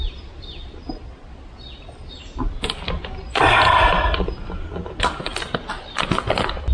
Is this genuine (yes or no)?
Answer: yes